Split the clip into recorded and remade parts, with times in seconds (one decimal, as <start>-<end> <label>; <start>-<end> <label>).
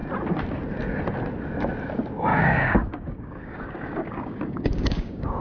0.0-2.3 recorded; 2.3-5.4 remade